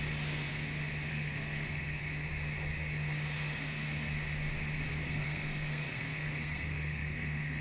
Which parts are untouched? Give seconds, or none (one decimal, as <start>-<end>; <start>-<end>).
0.0-1.1; 2.0-5.0